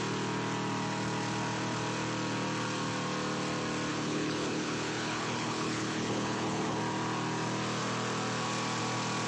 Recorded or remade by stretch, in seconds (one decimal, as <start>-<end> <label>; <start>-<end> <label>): 0.0-3.9 recorded; 3.9-6.8 remade; 6.8-9.3 recorded